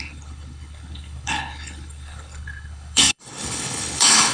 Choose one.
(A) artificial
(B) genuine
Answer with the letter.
A